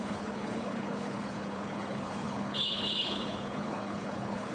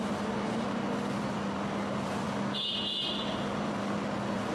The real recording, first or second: second